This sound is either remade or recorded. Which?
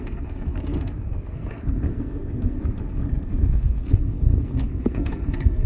remade